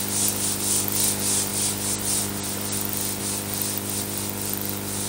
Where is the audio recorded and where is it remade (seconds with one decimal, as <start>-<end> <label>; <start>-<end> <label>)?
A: 0.0-5.1 recorded